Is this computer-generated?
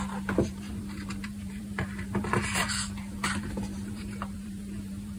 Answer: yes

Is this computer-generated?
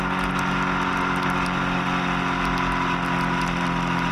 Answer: no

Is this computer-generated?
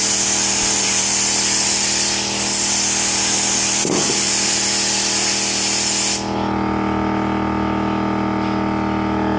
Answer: no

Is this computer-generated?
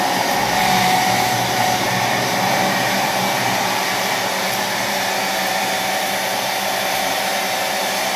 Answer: yes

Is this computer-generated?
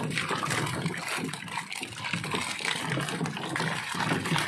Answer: no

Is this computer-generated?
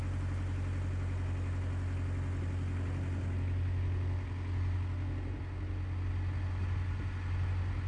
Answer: no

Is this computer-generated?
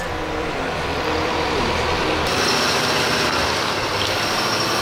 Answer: yes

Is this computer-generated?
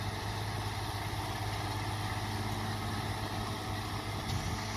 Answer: no